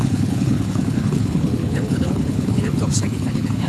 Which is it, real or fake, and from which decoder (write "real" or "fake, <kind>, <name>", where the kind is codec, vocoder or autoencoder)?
fake, codec, HILCodec